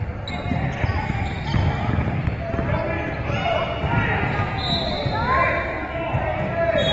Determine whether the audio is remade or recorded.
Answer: recorded